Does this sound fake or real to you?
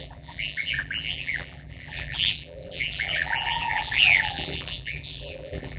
fake